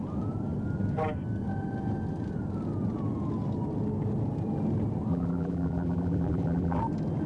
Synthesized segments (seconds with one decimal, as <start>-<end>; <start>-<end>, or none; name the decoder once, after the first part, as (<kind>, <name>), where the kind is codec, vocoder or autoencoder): 5.1-6.8 (vocoder, BigVGAN v2)